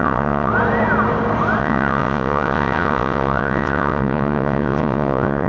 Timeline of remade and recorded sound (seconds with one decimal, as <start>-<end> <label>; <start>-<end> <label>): 0.0-0.5 remade; 0.5-1.6 recorded; 1.6-5.5 remade